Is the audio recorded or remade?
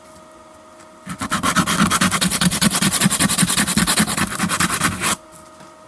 recorded